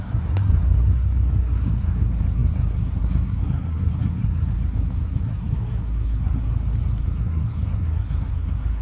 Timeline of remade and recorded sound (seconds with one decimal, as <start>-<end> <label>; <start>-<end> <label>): 0.0-6.5 remade; 6.5-7.0 recorded; 7.0-8.8 remade